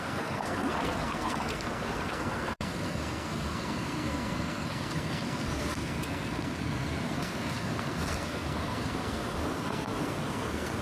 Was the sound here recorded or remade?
remade